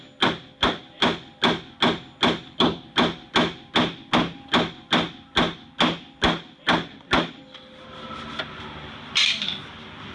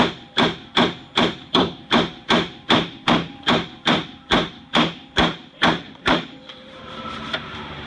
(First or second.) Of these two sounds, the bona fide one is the first